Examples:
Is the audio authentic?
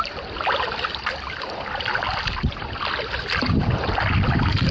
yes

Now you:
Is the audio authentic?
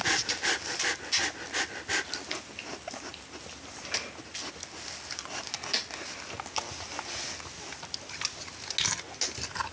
yes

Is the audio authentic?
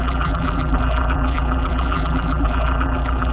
no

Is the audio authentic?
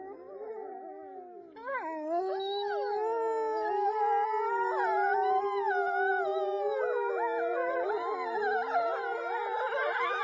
yes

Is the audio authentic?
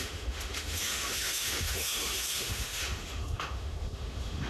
no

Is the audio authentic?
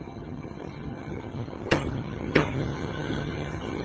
no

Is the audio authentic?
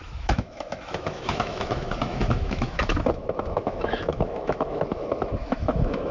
no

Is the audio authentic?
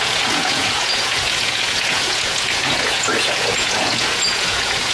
no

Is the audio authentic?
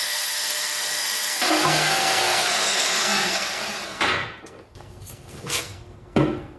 no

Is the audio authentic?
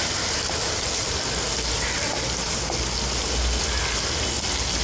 yes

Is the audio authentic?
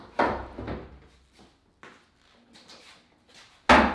yes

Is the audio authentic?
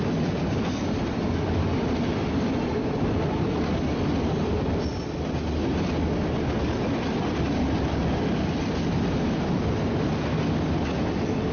yes